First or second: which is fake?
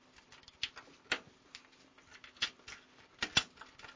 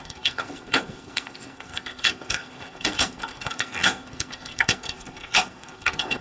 second